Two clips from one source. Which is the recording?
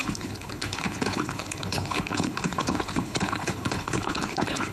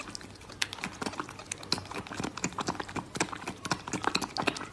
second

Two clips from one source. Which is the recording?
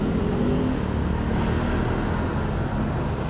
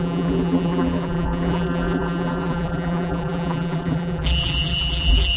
first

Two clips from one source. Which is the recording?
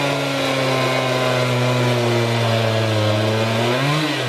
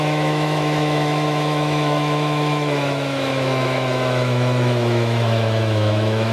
first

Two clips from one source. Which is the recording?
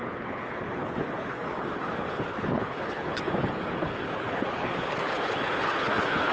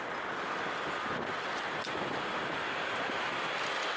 second